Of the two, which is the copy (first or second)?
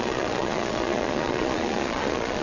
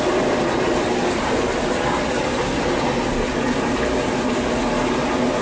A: first